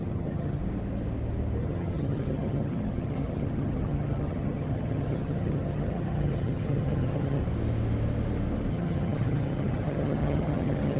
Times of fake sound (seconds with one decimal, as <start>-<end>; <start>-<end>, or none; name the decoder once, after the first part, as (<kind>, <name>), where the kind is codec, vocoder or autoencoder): 0.0-0.6 (vocoder, HiFi-GAN); 1.6-7.4; 8.7-11.0